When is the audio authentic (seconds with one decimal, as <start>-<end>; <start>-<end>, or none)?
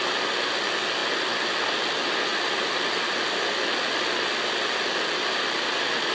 0.0-6.1